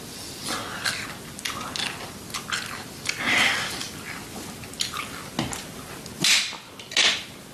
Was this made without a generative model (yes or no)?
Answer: yes